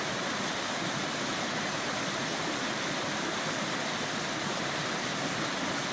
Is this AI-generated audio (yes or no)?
no